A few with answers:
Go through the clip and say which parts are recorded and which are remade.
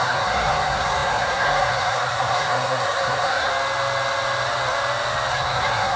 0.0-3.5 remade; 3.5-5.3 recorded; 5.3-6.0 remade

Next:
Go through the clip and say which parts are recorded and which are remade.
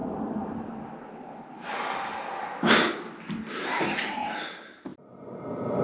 0.0-5.8 recorded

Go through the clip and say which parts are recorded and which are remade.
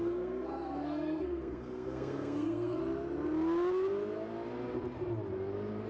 0.0-2.8 remade; 2.8-5.9 recorded